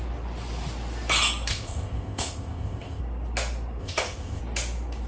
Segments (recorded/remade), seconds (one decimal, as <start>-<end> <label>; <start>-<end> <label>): 0.0-1.5 recorded; 1.5-3.0 remade; 3.0-3.8 recorded; 3.8-4.4 remade; 4.4-5.1 recorded